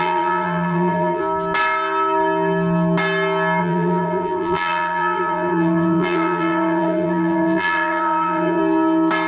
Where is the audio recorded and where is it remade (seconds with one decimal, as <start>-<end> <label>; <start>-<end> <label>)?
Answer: 0.0-1.2 remade; 1.2-3.6 recorded; 3.6-8.6 remade; 8.6-9.3 recorded